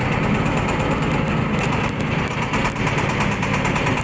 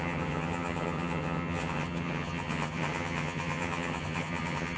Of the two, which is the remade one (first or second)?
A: second